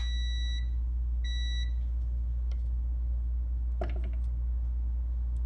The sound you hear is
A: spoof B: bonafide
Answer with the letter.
B